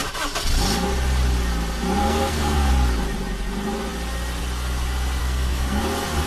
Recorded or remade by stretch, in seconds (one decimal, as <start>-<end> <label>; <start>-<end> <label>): 0.0-2.0 recorded; 2.0-2.7 remade; 2.7-5.2 recorded; 5.2-5.8 remade; 5.8-6.3 recorded